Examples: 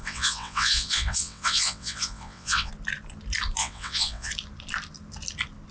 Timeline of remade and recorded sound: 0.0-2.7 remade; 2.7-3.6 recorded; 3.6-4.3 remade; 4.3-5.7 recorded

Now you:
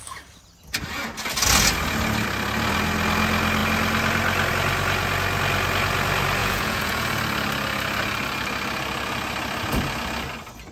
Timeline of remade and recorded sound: 0.0-6.4 recorded; 6.4-7.2 remade; 7.2-10.7 recorded

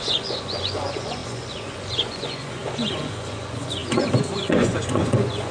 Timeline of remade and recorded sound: 0.0-5.5 remade